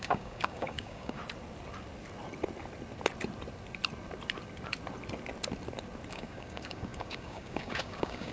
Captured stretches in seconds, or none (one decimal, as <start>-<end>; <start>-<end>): 1.2-6.1